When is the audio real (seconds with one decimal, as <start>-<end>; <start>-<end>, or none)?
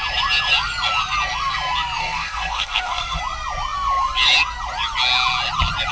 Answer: 0.0-2.0; 3.2-5.9